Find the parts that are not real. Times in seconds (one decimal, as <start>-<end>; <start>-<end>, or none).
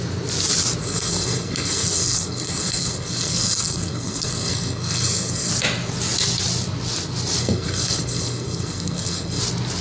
0.8-5.5; 7.4-9.4